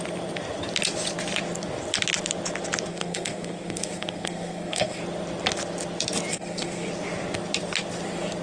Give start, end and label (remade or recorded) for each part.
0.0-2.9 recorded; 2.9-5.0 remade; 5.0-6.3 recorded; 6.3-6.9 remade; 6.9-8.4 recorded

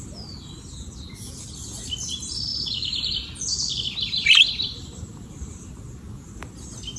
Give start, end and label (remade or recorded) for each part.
0.0-2.5 recorded; 2.5-3.1 remade; 3.1-3.6 recorded; 3.6-5.7 remade; 5.7-7.0 recorded

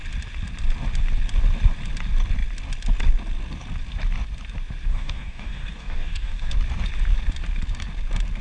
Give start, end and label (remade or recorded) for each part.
0.0-4.9 recorded; 4.9-6.5 remade; 6.5-8.4 recorded